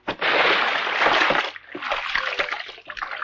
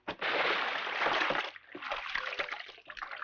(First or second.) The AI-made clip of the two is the second